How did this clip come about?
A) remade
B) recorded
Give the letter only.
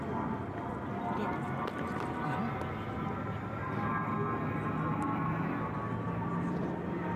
B